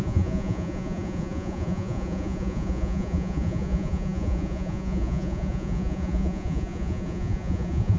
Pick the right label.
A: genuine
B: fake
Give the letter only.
B